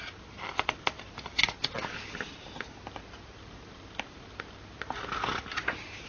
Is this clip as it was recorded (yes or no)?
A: yes